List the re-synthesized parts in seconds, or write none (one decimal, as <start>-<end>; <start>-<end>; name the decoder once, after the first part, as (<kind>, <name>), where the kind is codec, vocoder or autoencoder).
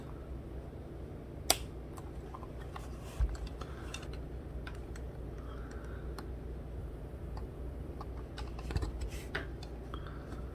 6.8-8.1 (vocoder, BigVGAN v2)